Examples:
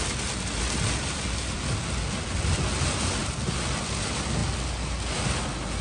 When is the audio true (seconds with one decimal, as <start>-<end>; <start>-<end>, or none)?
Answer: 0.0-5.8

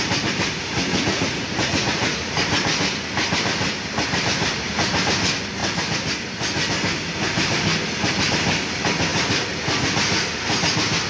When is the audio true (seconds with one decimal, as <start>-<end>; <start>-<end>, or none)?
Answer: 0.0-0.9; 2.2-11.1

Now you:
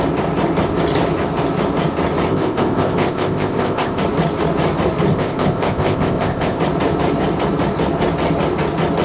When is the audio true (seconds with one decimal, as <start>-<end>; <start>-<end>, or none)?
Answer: 0.0-2.3; 4.0-5.1; 6.6-9.0

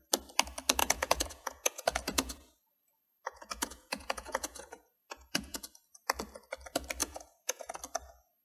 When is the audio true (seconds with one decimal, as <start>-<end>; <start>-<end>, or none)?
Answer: 0.0-0.8; 5.6-7.0; 7.8-8.4

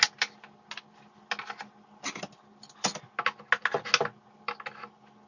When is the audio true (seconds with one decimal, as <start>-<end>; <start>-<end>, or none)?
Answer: 0.0-5.3

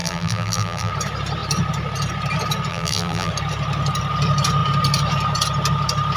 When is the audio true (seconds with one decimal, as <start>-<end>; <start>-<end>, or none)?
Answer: 0.9-2.7; 3.3-6.2